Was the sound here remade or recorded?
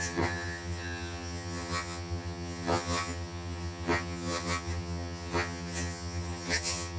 remade